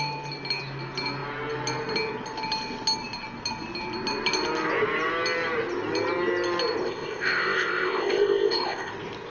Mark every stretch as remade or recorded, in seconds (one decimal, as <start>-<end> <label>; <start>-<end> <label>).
0.0-6.8 recorded; 6.8-8.9 remade; 8.9-9.3 recorded